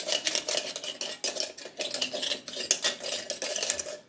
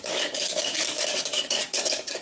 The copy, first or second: second